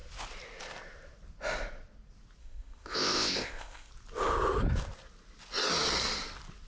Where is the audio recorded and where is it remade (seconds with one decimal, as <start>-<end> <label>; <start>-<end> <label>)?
0.0-2.4 recorded; 2.4-3.9 remade; 3.9-6.7 recorded